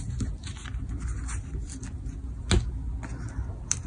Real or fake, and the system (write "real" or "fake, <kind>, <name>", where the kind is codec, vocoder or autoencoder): real